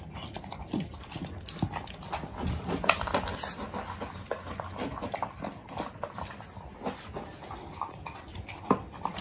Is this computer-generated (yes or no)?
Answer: no